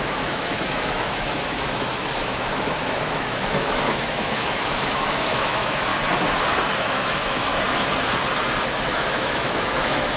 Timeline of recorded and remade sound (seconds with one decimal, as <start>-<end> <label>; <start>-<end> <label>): 0.0-5.9 remade; 5.9-6.8 recorded; 6.8-7.5 remade; 7.5-8.7 recorded; 8.7-10.2 remade

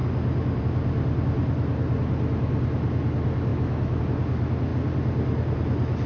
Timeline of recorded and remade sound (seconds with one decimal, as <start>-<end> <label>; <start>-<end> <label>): 0.0-3.5 recorded; 3.5-4.0 remade; 4.0-6.1 recorded

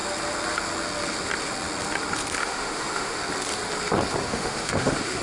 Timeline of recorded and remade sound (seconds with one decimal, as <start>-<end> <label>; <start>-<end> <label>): 0.0-2.4 recorded; 2.4-3.2 remade; 3.2-4.3 recorded; 4.3-5.2 remade

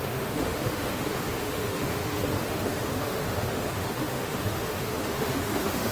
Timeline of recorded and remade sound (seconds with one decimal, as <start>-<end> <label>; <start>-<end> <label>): 0.0-5.9 remade

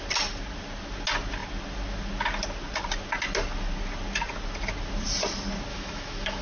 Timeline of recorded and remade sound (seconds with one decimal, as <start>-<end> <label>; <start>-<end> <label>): 0.0-5.7 recorded; 5.7-6.4 remade